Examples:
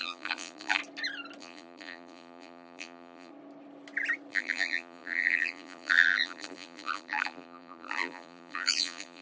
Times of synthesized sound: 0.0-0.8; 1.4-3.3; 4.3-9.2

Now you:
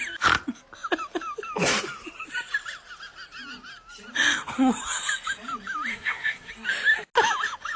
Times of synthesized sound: 5.9-6.5

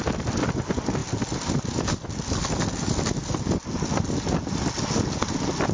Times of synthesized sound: none

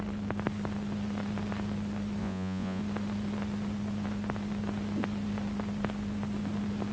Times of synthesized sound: 2.2-2.8